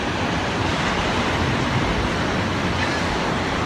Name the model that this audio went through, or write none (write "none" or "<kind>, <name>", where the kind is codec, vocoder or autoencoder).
none